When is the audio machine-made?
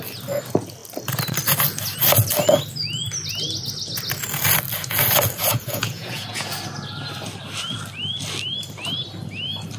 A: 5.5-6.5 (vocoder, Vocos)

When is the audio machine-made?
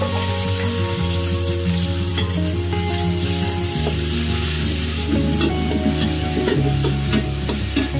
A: none